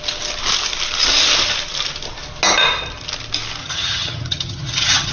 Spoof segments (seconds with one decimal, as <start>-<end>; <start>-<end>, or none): 3.6-5.1